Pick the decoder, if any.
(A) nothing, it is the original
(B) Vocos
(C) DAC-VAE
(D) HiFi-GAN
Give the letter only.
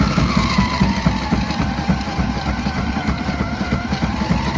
A